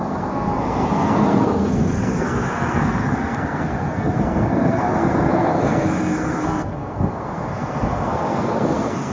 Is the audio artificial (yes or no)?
yes